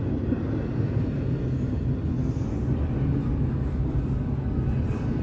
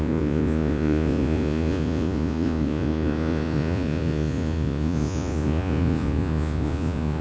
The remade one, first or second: second